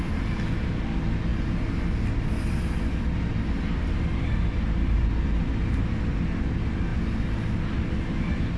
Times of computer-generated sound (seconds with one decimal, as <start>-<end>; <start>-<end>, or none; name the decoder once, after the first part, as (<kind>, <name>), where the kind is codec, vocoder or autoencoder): none